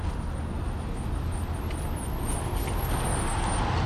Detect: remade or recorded recorded